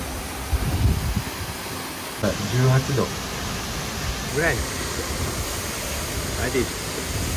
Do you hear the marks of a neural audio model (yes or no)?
no